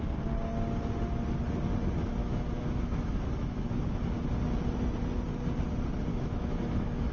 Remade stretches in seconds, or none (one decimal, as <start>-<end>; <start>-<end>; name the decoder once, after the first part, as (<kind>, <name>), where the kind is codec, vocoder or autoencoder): 2.2-4.0 (autoencoder, DAC-VAE); 6.1-7.1